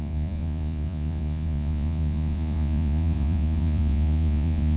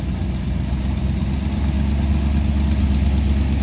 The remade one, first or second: first